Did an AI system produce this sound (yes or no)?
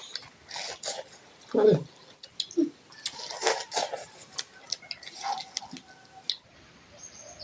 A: no